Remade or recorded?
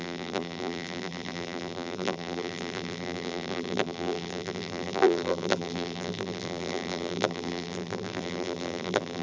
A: remade